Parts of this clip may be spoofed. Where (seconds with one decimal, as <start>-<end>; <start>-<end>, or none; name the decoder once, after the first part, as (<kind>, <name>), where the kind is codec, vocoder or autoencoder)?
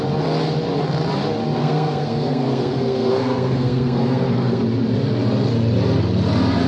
1.6-4.6 (codec, SNAC)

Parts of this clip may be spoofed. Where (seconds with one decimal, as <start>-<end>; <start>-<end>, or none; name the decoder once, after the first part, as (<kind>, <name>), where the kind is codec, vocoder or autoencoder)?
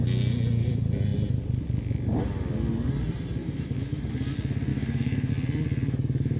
3.4-4.1 (autoencoder, DAC-VAE); 4.7-5.3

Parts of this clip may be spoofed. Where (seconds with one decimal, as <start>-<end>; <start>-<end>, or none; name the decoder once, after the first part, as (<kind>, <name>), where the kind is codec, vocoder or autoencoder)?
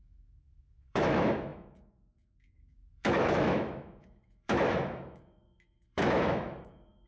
0.0-7.1 (autoencoder, DAC-VAE)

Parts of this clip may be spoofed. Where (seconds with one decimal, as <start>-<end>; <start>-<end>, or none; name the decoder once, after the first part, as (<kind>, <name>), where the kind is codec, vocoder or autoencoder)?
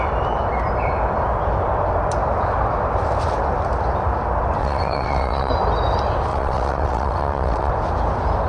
4.6-5.5 (vocoder, WaveNeXt); 6.3-7.7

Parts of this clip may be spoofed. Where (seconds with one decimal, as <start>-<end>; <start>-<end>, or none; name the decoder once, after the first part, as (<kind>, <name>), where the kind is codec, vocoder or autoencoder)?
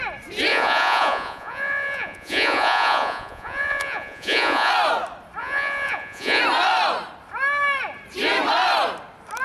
0.5-4.7 (vocoder, Vocos); 5.4-6.4